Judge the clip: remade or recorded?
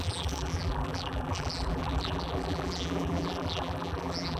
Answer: remade